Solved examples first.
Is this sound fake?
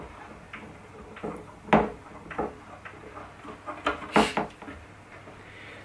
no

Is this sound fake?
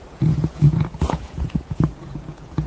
yes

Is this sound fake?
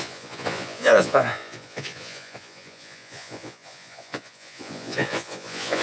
yes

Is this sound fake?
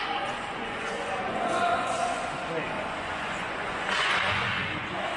yes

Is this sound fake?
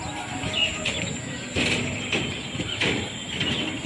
no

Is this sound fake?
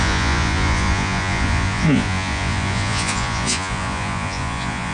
yes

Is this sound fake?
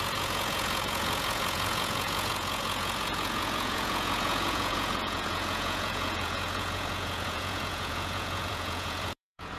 yes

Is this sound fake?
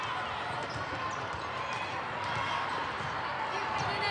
no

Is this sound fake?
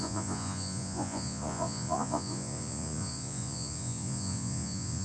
yes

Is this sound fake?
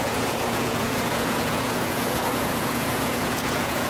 yes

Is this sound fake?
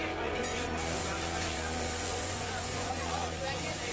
yes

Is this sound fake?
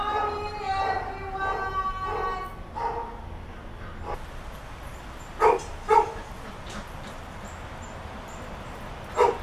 no